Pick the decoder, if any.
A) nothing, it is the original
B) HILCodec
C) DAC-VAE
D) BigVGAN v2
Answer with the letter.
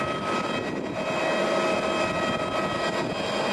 A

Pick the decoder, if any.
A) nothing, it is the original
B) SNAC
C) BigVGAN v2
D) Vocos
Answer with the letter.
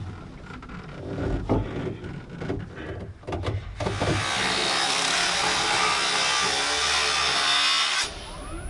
A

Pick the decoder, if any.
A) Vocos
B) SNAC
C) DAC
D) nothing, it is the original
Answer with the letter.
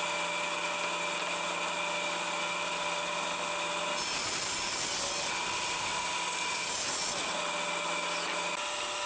D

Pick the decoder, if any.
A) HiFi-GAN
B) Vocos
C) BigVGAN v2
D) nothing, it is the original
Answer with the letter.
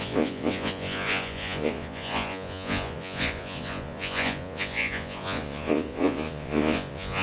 B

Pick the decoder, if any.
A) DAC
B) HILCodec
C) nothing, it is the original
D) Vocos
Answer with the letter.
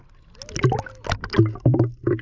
C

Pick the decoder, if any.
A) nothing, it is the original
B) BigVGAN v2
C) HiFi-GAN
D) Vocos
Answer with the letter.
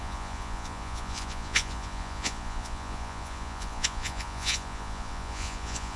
D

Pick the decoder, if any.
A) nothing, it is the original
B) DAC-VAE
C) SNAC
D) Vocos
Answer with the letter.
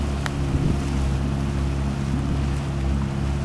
A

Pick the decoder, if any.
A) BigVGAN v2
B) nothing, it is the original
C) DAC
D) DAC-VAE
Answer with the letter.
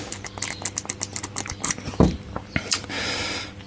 B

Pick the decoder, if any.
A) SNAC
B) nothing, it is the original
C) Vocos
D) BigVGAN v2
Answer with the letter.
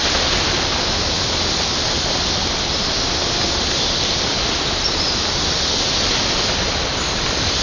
B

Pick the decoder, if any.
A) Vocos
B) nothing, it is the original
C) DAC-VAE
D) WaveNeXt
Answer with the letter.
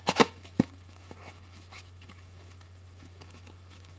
C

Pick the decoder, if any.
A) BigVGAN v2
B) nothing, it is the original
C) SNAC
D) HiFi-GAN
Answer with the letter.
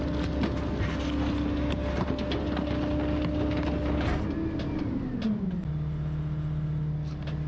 B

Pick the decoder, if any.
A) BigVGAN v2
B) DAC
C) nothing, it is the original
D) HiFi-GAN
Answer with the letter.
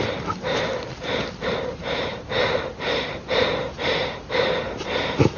A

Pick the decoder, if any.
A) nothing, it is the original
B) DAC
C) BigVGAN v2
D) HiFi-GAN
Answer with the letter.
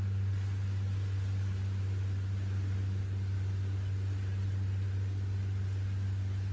A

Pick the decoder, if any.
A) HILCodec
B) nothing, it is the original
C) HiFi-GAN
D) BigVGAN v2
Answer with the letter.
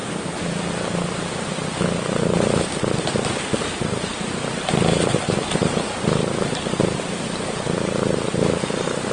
B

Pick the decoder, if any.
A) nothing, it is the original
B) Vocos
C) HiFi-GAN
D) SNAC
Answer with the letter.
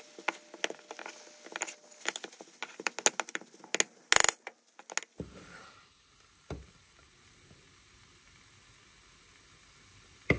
A